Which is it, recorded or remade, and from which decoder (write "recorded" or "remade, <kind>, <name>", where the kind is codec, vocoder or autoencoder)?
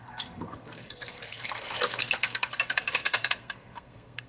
remade, codec, SNAC